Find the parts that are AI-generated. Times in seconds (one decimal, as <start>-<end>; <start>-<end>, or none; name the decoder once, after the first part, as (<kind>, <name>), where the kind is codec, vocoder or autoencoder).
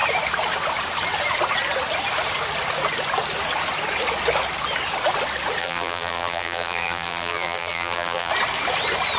5.6-8.3 (vocoder, BigVGAN v2)